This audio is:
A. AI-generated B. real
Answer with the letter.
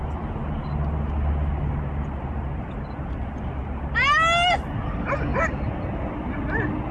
B